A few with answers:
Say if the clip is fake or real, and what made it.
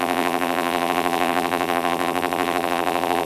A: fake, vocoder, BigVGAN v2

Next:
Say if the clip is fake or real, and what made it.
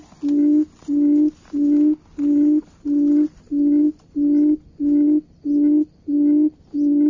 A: real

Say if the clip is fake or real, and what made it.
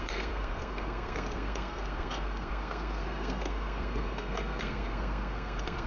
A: fake, codec, SNAC